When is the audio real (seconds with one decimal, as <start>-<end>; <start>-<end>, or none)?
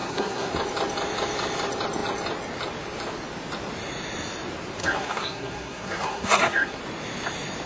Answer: 0.5-4.8; 6.8-7.7